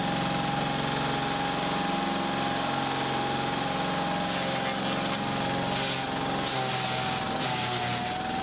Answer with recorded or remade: recorded